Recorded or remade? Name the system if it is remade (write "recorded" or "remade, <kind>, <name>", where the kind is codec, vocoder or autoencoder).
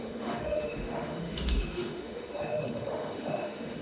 remade, autoencoder, DAC-VAE